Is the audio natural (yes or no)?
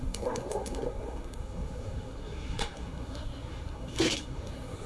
no